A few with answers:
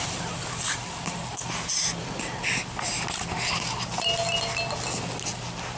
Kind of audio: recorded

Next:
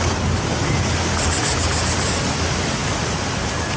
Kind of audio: recorded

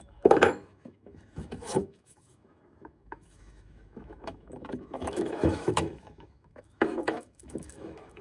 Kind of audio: remade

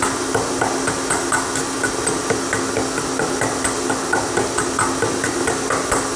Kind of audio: recorded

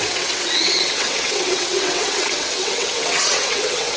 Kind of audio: remade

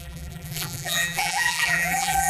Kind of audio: remade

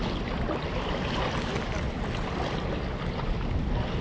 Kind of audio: recorded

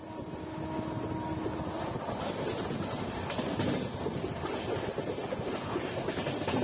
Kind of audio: recorded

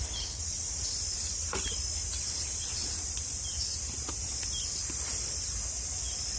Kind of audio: recorded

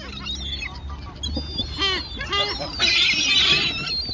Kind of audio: recorded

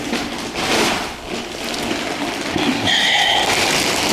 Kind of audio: recorded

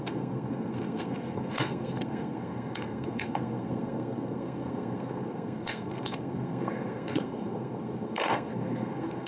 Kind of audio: remade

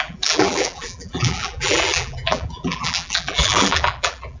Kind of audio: remade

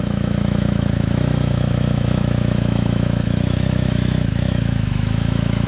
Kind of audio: remade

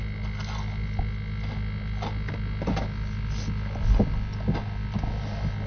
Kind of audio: recorded